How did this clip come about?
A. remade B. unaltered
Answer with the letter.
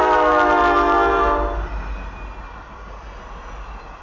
B